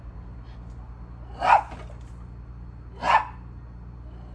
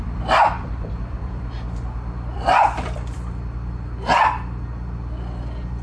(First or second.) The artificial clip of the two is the second